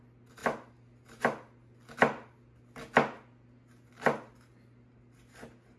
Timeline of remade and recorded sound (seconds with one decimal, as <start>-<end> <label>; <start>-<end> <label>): 0.0-5.8 recorded